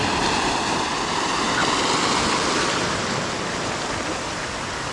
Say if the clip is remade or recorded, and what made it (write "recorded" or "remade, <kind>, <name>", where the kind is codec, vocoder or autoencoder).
recorded